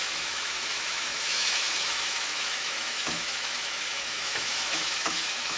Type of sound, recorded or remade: remade